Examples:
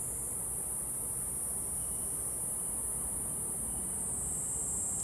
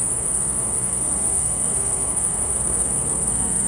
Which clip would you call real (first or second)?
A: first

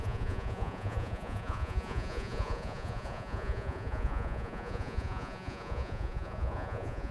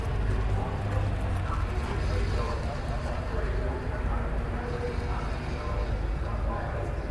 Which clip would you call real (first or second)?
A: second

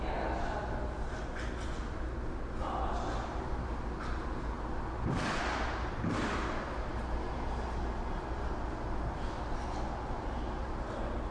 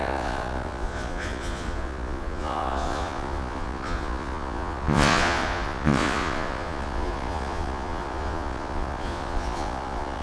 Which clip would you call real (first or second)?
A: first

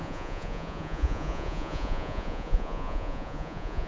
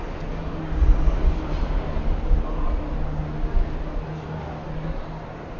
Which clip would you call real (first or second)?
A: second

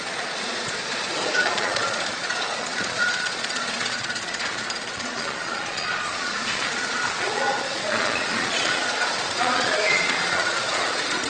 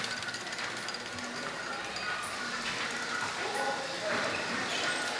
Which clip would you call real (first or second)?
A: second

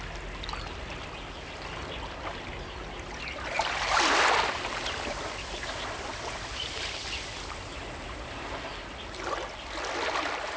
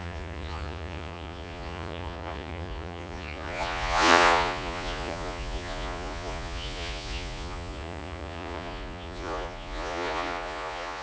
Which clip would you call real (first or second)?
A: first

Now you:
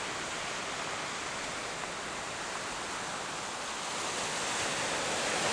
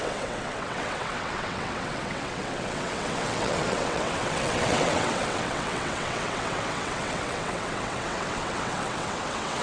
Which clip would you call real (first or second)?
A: first